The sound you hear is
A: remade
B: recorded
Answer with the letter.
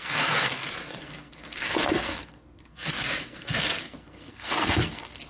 A